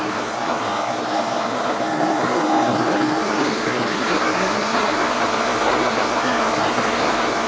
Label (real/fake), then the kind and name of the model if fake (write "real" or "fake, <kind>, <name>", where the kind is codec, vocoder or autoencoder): fake, codec, SNAC